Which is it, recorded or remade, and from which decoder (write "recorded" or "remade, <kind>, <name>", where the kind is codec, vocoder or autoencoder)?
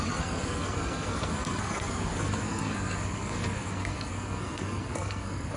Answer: remade, codec, SNAC